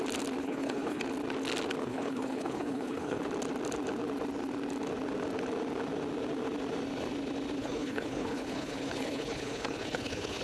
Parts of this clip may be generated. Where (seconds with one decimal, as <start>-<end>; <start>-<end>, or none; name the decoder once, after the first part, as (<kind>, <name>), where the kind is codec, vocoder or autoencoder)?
0.4-1.0 (codec, HILCodec); 1.8-3.2; 7.6-10.4